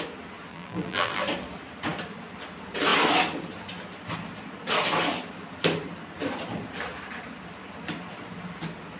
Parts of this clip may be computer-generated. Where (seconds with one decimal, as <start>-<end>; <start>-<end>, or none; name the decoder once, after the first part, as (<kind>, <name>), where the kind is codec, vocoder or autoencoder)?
0.5-1.2 (vocoder, BigVGAN v2)